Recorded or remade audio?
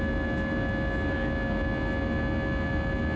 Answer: recorded